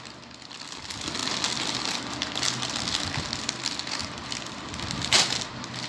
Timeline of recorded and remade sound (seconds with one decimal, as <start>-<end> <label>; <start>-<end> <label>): 0.0-4.0 recorded; 4.0-5.5 remade; 5.5-5.9 recorded